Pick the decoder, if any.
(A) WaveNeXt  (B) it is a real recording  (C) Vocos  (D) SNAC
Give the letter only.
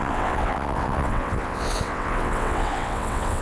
A